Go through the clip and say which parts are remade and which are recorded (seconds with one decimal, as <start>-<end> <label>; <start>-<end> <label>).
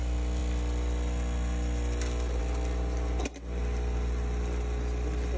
0.0-5.4 recorded